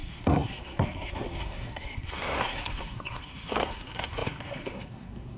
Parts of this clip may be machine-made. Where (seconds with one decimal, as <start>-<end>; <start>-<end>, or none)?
0.0-5.4